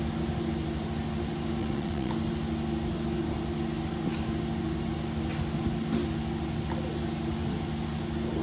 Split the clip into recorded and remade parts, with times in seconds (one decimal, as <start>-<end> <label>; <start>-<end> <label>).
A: 0.0-1.6 recorded; 1.6-2.1 remade; 2.1-8.4 recorded